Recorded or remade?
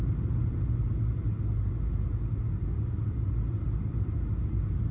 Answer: recorded